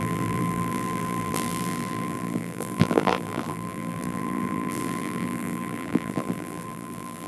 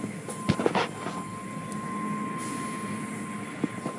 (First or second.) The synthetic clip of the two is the first